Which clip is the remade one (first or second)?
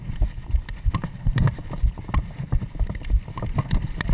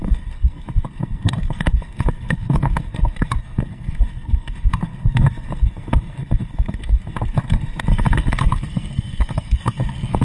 second